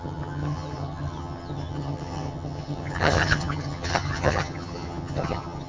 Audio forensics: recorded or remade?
remade